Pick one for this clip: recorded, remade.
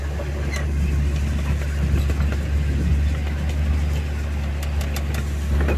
recorded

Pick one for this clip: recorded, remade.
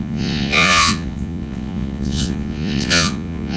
remade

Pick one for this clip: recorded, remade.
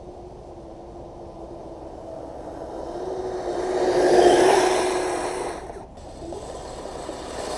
recorded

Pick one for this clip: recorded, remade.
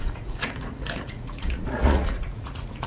remade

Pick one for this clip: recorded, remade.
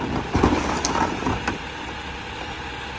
recorded